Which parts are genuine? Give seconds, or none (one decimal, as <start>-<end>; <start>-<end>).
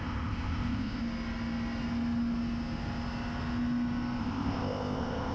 1.0-4.2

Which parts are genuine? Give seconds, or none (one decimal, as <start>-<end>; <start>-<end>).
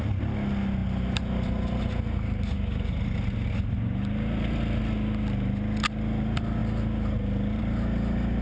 0.0-8.4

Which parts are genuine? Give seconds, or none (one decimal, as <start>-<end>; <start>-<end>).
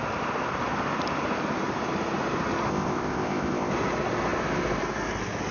0.0-2.7; 3.7-5.5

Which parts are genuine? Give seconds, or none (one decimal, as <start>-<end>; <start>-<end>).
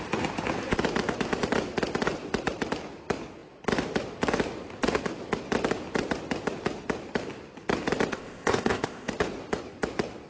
0.0-8.1; 9.1-10.3